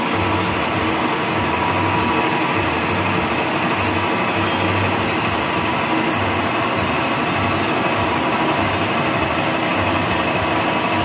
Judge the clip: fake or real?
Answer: real